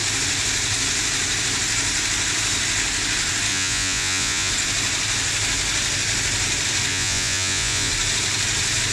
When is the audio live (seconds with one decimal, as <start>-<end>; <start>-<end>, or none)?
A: 0.0-3.5; 4.5-6.9; 7.9-8.9